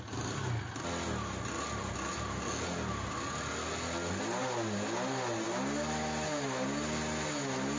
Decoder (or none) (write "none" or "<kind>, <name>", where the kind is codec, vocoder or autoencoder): none